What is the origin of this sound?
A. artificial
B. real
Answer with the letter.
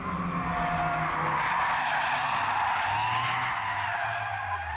B